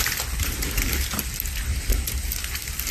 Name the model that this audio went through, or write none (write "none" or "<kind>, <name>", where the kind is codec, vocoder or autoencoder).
none